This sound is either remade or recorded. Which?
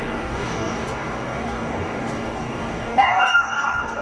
remade